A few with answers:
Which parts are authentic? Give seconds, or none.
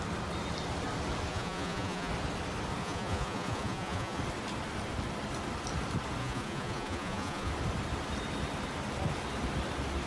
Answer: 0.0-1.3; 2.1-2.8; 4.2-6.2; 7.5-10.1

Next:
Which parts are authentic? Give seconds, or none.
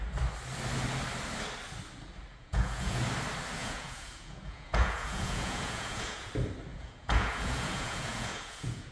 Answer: 0.0-2.3; 3.0-3.6; 6.3-6.7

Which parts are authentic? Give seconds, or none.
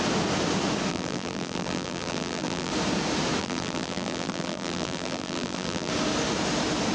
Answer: 0.0-0.9; 2.7-3.4; 5.9-6.9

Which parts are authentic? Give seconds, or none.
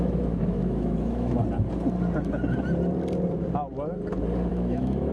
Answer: 1.4-4.5